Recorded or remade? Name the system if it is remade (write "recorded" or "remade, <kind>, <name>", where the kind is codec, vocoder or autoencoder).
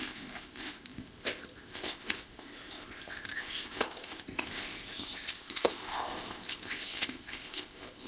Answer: remade, codec, ZipCodec